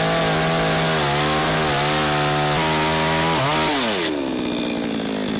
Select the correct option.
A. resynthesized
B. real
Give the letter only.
B